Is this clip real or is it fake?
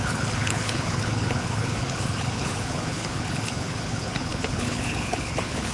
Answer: fake